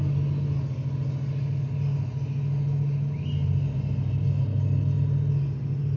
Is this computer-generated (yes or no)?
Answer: no